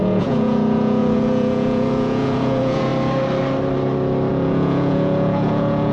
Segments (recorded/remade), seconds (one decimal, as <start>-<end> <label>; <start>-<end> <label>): 0.0-2.9 remade; 2.9-4.3 recorded; 4.3-5.9 remade